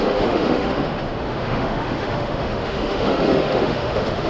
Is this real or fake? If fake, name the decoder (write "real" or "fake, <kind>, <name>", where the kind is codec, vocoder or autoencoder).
fake, autoencoder, DAC-VAE